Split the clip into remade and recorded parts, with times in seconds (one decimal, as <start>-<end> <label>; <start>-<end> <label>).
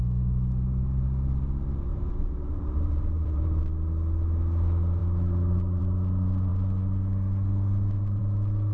0.0-1.9 recorded; 1.9-3.6 remade; 3.6-8.7 recorded